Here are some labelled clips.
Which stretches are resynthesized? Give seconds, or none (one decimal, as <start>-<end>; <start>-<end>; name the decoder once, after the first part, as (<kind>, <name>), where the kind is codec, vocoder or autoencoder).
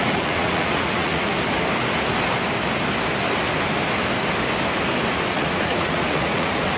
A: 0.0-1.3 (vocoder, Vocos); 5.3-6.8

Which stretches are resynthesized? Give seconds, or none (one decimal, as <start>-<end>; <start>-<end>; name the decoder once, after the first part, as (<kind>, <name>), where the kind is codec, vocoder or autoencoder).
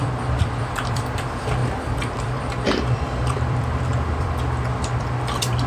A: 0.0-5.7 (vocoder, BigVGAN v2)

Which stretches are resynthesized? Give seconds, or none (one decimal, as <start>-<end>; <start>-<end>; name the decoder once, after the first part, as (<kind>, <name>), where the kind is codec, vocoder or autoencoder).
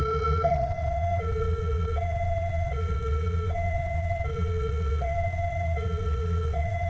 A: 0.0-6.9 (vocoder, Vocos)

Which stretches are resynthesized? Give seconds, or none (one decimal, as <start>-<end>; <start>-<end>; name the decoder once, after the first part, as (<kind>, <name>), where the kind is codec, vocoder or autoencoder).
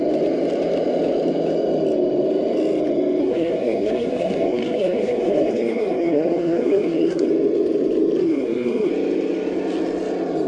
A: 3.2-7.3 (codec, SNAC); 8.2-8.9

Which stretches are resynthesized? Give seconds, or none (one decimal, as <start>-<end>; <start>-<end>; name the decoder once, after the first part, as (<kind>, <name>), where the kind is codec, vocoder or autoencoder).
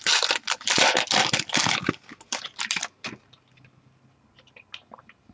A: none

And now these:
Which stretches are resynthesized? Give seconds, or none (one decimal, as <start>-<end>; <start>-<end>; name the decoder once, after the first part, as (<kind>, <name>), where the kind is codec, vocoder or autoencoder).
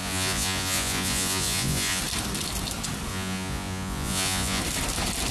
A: 0.0-2.0 (vocoder, Vocos); 3.1-4.6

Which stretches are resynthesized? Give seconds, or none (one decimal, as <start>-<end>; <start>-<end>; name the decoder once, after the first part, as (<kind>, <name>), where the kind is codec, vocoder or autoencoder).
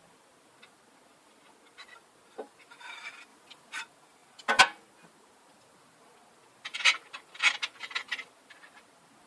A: none